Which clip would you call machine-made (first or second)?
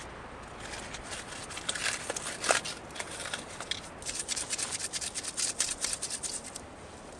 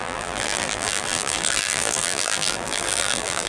second